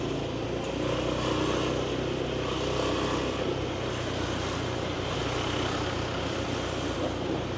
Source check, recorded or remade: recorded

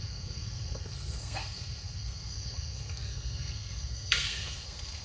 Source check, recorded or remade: remade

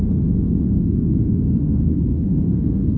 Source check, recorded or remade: remade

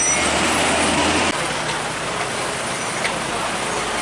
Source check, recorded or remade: recorded